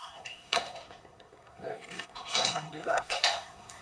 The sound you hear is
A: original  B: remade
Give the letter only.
B